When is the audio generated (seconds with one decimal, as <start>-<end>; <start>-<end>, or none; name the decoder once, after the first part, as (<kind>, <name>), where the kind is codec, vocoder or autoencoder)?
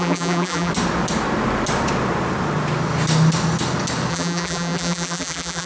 0.0-0.7 (vocoder, BigVGAN v2); 4.1-5.7